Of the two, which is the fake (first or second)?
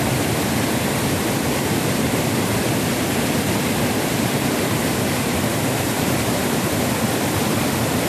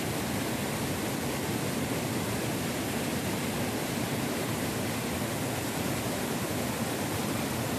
first